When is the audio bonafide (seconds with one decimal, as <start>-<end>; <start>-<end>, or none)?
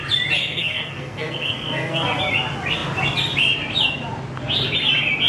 0.0-0.4; 2.2-5.3